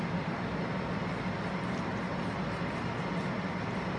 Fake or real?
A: real